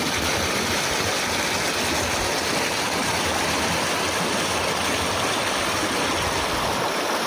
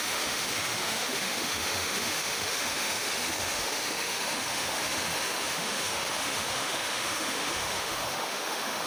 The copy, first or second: second